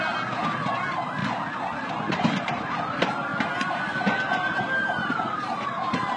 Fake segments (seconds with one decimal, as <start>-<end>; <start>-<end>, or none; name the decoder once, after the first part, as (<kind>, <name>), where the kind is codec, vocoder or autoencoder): 0.0-1.2 (vocoder, BigVGAN v2); 1.9-3.3; 4.5-6.2